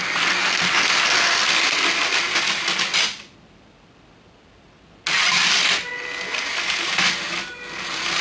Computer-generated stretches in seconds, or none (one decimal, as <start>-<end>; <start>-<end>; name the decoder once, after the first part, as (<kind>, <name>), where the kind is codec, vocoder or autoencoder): none